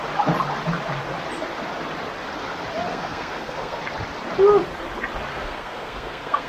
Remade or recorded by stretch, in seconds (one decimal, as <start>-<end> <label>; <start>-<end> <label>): 0.0-2.9 recorded; 2.9-3.8 remade; 3.8-5.3 recorded; 5.3-6.5 remade